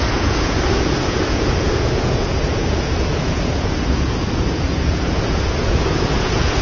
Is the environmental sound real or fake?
fake